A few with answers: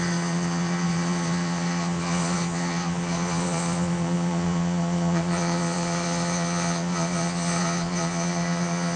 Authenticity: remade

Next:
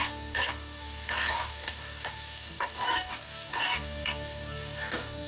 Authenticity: remade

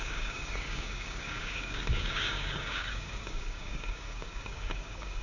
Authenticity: remade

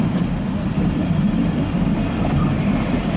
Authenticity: remade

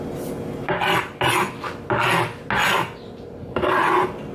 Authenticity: recorded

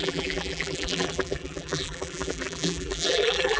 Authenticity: remade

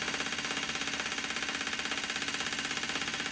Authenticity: recorded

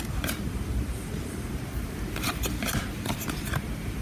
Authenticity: remade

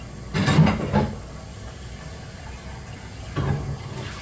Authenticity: recorded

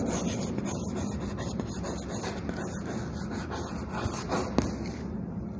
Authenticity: recorded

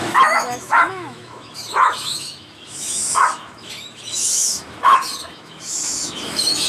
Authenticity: remade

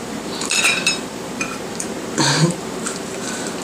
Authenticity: remade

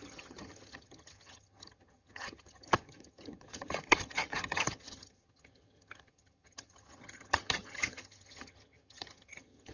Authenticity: remade